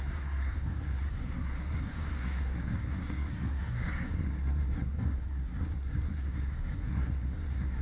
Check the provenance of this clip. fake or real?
fake